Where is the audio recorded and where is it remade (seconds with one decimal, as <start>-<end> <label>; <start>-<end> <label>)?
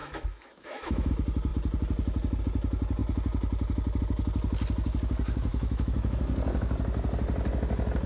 0.0-1.1 remade; 1.1-5.5 recorded; 5.5-6.2 remade; 6.2-8.1 recorded